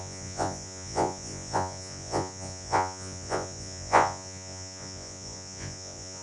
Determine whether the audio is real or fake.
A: fake